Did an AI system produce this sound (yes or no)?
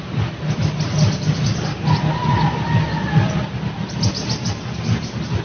no